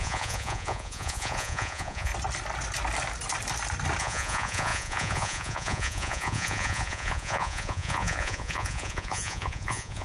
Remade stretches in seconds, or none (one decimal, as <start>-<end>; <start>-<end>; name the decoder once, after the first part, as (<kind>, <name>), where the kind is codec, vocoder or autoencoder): 0.0-2.1 (vocoder, Vocos); 4.0-10.0